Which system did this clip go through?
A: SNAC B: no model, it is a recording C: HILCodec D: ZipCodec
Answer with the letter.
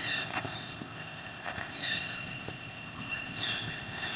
D